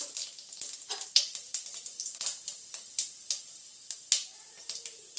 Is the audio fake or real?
real